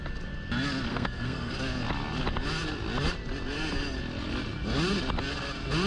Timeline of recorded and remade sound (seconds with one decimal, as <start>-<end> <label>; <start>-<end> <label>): 0.0-0.9 recorded; 0.9-1.5 remade; 1.5-5.9 recorded